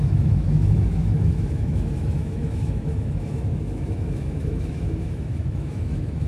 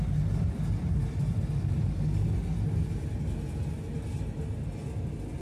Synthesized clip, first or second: first